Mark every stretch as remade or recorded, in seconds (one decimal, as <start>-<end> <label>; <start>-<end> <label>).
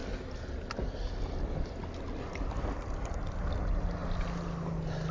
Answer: 0.0-5.1 recorded